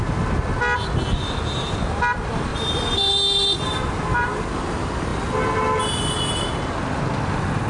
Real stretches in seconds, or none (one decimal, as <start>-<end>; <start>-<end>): 0.0-2.5; 3.1-7.7